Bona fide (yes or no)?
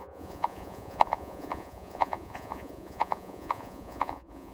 no